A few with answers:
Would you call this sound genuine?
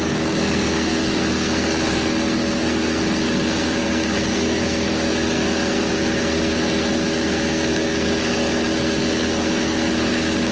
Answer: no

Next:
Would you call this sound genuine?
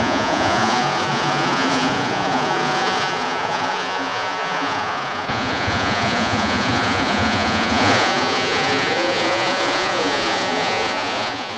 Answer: no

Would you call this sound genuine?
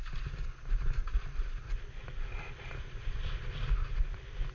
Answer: yes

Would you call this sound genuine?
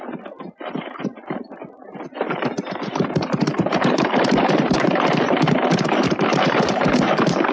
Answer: no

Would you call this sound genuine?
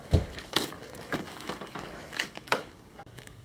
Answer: no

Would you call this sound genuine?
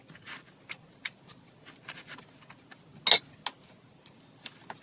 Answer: yes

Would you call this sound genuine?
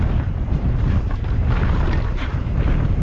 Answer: yes